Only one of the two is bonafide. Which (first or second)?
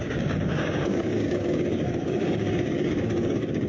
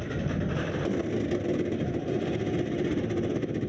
second